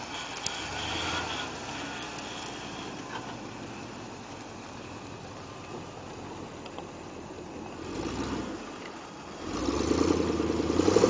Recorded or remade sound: recorded